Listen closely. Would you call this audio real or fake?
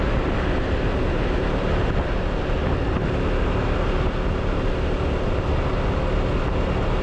real